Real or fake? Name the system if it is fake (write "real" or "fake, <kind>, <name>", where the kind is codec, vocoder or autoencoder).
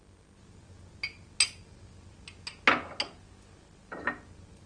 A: real